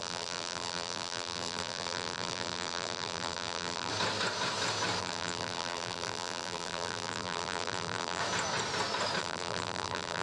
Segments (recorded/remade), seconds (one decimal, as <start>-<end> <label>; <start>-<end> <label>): 0.0-3.9 remade; 3.9-5.0 recorded; 5.0-8.2 remade; 8.2-9.2 recorded; 9.2-10.2 remade